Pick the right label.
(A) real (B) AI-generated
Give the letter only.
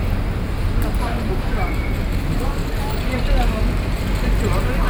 A